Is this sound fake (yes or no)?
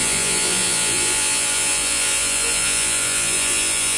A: yes